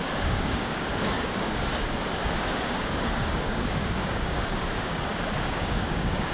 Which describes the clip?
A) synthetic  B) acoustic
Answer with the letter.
A